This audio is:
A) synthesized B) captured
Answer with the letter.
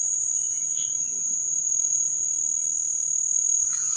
B